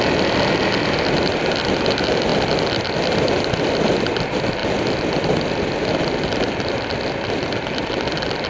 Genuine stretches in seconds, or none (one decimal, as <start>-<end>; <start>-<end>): 0.0-8.5